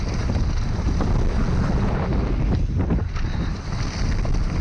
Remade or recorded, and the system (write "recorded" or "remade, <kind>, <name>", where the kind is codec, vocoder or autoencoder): recorded